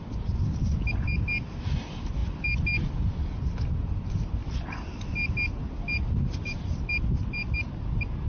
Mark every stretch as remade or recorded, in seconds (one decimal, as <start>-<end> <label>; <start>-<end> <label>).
0.0-8.3 recorded